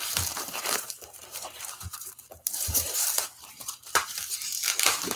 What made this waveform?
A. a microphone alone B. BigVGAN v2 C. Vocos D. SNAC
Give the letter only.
B